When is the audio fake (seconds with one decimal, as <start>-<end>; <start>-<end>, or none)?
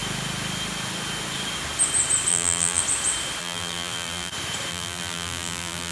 2.3-2.8; 3.4-4.3; 4.7-5.9